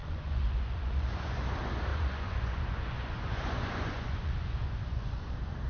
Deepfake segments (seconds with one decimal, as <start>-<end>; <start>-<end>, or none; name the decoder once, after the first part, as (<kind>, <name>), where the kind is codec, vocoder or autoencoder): 0.0-1.4 (vocoder, Vocos); 1.9-5.3

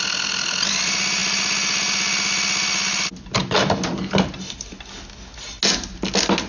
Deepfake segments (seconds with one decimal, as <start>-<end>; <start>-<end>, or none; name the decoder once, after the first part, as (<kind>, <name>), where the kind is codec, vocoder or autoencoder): none

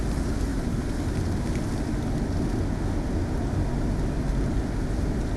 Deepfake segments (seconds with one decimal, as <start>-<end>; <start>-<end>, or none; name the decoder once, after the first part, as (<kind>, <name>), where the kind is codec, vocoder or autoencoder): none

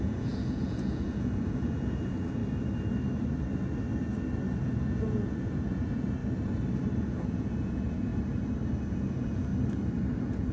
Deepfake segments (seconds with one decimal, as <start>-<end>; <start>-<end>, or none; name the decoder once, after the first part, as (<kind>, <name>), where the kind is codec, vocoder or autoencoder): 0.0-2.4 (vocoder, Vocos); 4.6-6.2; 7.0-8.1; 8.9-9.5; 10.1-10.5

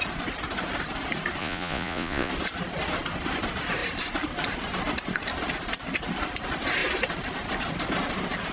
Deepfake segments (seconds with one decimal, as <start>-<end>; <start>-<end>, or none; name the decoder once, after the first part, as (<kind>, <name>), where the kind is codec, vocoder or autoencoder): 1.4-2.3 (vocoder, Vocos)

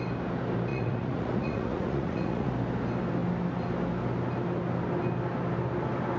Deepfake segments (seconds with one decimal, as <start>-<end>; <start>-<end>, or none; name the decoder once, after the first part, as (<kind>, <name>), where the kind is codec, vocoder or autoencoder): 0.7-2.5 (vocoder, Vocos)

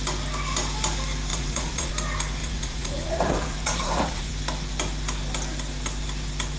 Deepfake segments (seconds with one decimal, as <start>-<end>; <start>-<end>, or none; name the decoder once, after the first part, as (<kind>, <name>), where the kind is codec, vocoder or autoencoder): 1.3-1.9 (vocoder, Vocos); 2.4-4.3

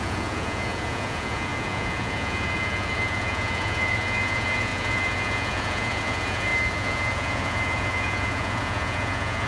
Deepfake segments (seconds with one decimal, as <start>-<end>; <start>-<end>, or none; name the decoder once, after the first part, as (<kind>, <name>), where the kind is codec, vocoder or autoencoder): 0.0-9.5 (vocoder, Vocos)